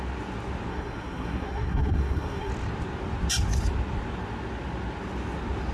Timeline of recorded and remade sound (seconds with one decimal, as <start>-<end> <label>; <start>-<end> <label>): 0.0-0.7 recorded; 0.7-2.5 remade; 2.5-5.7 recorded